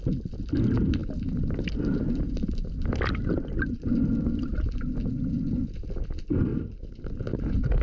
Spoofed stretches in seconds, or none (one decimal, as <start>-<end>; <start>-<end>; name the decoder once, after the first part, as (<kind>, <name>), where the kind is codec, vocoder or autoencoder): 1.0-2.3 (vocoder, BigVGAN v2); 6.5-7.1

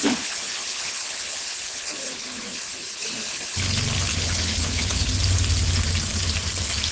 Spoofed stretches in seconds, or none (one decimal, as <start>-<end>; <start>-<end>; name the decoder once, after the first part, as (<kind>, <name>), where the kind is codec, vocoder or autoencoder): 0.0-3.6 (codec, HILCodec); 4.1-5.1